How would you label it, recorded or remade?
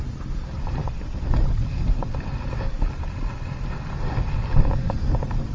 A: recorded